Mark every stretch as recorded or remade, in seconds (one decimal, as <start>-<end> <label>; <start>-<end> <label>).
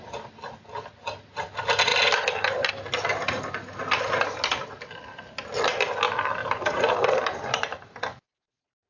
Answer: 0.0-6.4 recorded; 6.4-8.9 remade